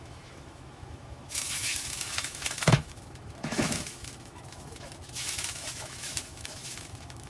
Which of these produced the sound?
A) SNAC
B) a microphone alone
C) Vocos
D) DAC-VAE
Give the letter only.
D